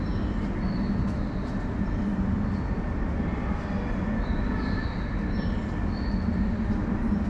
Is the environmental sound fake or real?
real